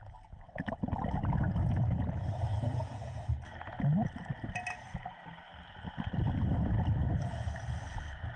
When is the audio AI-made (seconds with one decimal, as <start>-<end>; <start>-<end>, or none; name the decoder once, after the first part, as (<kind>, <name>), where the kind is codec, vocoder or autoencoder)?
2.5-3.2 (vocoder, Vocos)

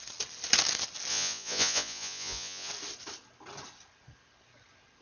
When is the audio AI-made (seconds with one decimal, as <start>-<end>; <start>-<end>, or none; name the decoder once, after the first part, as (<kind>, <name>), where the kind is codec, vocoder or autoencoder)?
1.1-2.7 (vocoder, Vocos)